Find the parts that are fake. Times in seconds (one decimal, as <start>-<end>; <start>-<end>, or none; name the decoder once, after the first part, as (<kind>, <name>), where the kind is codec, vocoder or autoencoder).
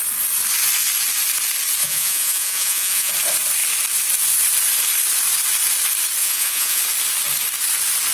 1.8-3.1 (vocoder, Vocos); 6.2-6.8